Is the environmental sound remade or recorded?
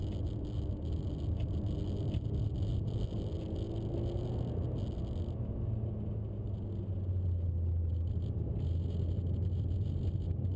recorded